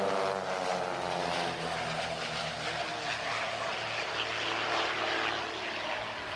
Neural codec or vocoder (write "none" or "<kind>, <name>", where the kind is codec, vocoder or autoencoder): none